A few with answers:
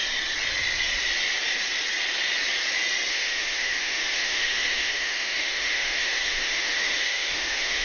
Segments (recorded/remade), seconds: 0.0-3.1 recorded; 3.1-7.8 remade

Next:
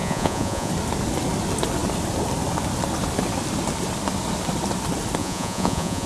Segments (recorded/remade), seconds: 0.0-0.7 remade; 0.7-5.2 recorded; 5.2-6.1 remade

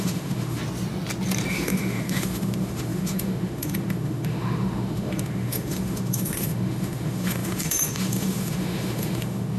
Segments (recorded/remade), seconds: 0.0-0.6 remade; 0.6-1.5 recorded; 1.5-9.6 remade

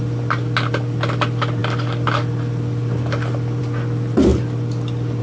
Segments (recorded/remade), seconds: 0.0-5.2 recorded

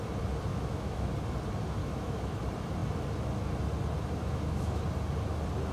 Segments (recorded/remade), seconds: 0.0-0.5 recorded; 0.5-1.1 remade; 1.1-1.8 recorded; 1.8-2.4 remade; 2.4-4.2 recorded; 4.2-4.8 remade; 4.8-5.7 recorded

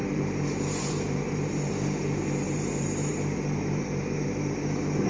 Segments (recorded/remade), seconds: 0.0-5.1 remade